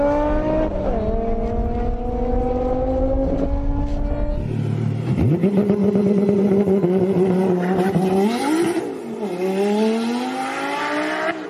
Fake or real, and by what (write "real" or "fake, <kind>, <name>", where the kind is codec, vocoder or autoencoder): real